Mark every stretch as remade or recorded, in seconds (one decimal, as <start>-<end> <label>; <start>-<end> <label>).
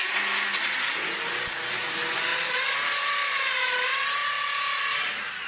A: 0.0-2.3 recorded; 2.3-3.0 remade; 3.0-5.5 recorded